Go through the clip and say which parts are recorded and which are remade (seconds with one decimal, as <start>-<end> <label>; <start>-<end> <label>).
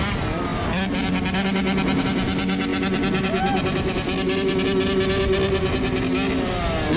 0.0-7.0 recorded